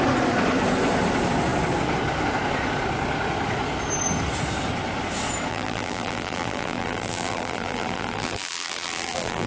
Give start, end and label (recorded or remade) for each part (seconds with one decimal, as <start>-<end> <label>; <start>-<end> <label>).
0.0-5.5 recorded; 5.5-9.5 remade